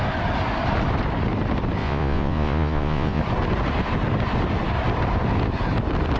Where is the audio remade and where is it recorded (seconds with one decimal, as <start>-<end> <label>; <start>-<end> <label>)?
0.0-1.8 recorded; 1.8-3.2 remade; 3.2-6.2 recorded